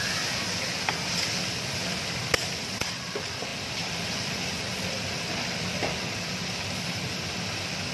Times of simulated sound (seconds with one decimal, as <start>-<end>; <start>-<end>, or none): none

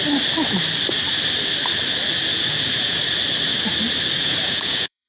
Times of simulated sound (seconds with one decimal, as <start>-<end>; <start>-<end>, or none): 2.3-3.0; 4.2-5.1

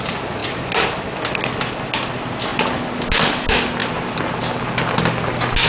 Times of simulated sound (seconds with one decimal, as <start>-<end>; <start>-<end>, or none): none

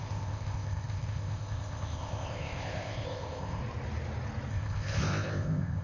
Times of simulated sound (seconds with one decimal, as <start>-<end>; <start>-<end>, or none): 0.0-3.6; 4.5-5.8

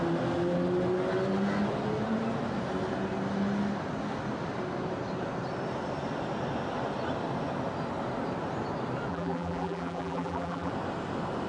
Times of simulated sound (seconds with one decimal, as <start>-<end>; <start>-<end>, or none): 9.1-10.7

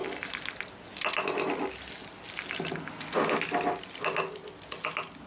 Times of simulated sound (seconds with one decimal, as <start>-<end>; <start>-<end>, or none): none

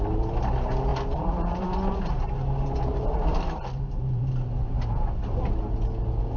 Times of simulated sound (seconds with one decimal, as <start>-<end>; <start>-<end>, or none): 0.9-4.7

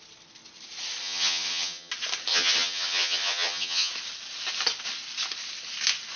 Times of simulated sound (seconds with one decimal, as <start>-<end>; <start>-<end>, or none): 1.0-1.9; 2.3-3.9